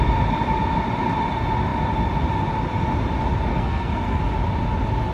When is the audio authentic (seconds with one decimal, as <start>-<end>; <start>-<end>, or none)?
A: 0.0-3.5; 4.2-5.1